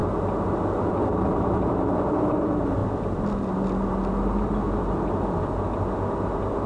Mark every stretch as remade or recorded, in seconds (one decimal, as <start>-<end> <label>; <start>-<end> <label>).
0.0-1.1 recorded; 1.1-2.8 remade; 2.8-6.7 recorded